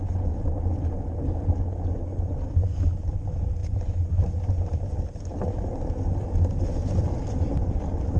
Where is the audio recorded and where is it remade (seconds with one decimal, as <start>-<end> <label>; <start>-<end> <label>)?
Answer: 0.0-3.6 recorded; 3.6-4.1 remade; 4.1-8.2 recorded